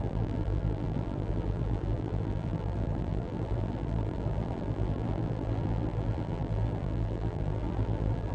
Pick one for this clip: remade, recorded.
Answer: remade